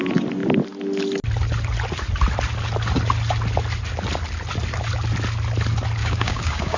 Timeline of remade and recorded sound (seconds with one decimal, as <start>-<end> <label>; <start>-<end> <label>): 0.0-6.0 recorded; 6.0-6.8 remade